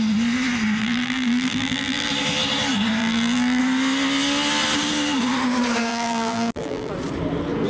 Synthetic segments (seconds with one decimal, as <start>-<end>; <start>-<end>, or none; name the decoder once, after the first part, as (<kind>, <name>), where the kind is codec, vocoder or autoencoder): 0.8-2.1 (vocoder, BigVGAN v2); 3.0-3.6; 5.9-6.9